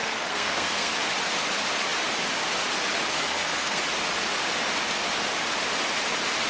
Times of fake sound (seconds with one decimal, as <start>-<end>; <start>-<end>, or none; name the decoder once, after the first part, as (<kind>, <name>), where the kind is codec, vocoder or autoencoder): 0.0-0.9 (codec, SNAC); 3.1-3.8